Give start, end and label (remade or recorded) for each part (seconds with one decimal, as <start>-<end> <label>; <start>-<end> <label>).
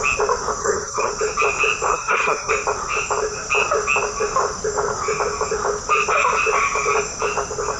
0.0-0.6 recorded; 0.6-1.1 remade; 1.1-1.9 recorded; 1.9-2.5 remade; 2.5-7.8 recorded